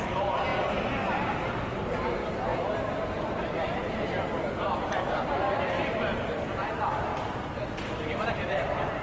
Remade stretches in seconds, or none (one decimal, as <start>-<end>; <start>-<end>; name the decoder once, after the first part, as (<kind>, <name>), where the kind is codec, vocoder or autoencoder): 0.0-7.1 (vocoder, BigVGAN v2); 8.0-9.0